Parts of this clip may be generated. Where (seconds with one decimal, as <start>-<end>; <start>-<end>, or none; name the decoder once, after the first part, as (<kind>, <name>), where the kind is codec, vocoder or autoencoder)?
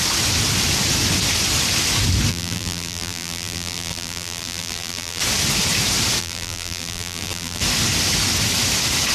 2.3-5.2 (vocoder, BigVGAN v2); 6.2-7.6